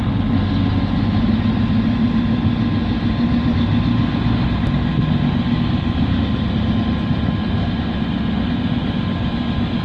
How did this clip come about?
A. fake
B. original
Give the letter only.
B